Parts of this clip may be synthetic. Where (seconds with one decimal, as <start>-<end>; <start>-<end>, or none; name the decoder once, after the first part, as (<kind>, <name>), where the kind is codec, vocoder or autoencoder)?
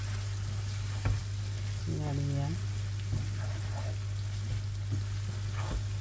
none